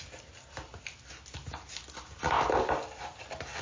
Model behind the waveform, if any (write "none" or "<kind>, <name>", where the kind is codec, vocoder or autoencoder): none